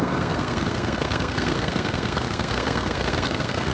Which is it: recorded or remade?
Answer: remade